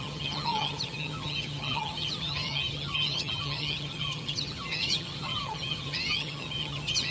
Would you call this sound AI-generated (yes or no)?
yes